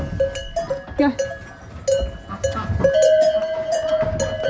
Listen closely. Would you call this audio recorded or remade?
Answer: recorded